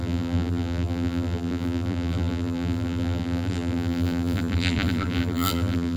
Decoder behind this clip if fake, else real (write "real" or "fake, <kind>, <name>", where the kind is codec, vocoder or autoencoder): fake, vocoder, BigVGAN v2